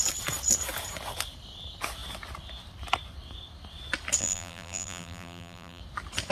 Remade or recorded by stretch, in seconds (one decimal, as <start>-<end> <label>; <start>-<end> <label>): 0.0-4.2 recorded; 4.2-5.8 remade; 5.8-6.3 recorded